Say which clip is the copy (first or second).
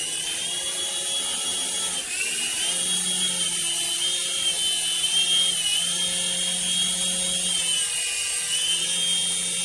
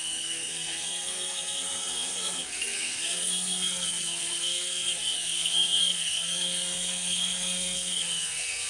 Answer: second